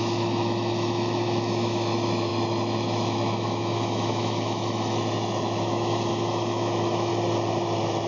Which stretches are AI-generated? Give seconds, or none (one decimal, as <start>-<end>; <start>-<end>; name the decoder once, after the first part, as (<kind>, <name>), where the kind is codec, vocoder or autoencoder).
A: 0.0-7.1 (autoencoder, DAC-VAE)

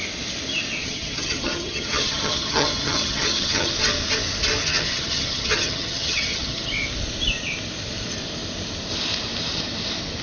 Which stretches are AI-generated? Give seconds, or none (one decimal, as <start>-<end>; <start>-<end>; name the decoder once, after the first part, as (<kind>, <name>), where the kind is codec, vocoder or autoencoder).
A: 0.8-3.7 (vocoder, HiFi-GAN); 4.6-6.7

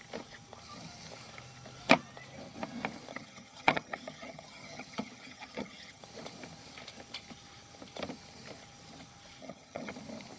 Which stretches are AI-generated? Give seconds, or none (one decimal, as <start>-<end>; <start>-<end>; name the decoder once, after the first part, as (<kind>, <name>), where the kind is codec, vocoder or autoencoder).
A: 3.1-6.0 (vocoder, HiFi-GAN); 9.4-9.9

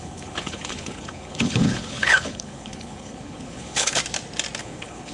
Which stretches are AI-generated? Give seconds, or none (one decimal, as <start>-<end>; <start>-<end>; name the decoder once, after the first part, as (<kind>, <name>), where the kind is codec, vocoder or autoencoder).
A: 0.0-4.0 (codec, HILCodec); 4.6-5.1

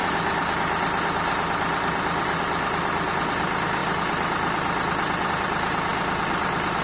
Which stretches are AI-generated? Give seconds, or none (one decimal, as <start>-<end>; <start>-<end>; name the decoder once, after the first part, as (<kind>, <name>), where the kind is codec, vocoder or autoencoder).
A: none

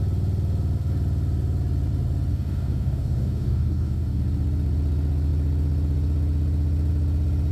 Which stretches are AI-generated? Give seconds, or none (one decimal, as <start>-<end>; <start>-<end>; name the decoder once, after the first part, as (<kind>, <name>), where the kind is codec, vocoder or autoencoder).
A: 2.3-4.2 (codec, DAC)

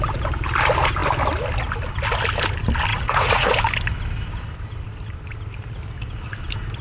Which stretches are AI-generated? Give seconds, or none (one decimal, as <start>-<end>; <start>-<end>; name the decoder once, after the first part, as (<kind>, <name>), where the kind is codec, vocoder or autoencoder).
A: 2.9-3.5 (vocoder, Vocos)

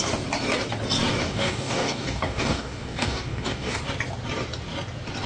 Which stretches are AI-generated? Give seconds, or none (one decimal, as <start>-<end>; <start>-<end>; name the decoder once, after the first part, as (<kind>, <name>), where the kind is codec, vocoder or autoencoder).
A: 1.2-3.8 (codec, DAC)